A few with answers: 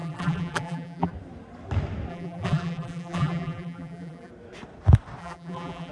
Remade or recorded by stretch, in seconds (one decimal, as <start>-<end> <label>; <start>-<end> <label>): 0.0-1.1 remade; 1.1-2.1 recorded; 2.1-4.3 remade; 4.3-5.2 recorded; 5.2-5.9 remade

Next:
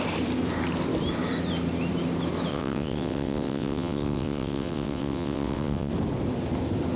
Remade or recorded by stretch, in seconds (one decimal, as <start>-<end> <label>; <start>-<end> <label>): 0.0-2.5 recorded; 2.5-5.9 remade; 5.9-7.0 recorded

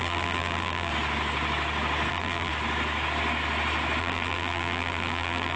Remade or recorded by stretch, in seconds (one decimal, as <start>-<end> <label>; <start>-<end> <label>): 0.0-0.9 remade; 0.9-2.1 recorded; 2.1-2.5 remade; 2.5-4.0 recorded; 4.0-5.6 remade

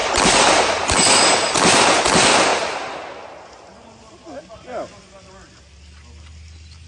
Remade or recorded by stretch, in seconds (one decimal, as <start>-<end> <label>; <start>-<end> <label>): 0.0-6.9 recorded

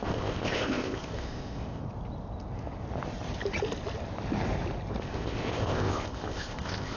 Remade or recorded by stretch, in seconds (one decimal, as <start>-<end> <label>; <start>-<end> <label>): 0.0-1.8 remade; 1.8-5.0 recorded; 5.0-7.0 remade

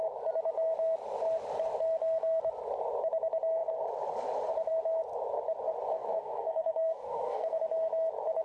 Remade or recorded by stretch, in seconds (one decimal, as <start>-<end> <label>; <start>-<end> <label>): 0.0-5.9 recorded; 5.9-7.6 remade; 7.6-8.4 recorded